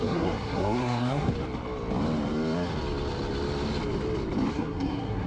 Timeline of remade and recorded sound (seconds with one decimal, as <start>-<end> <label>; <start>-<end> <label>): 0.0-1.3 remade; 1.3-4.5 recorded; 4.5-5.3 remade